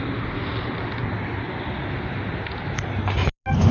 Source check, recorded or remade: recorded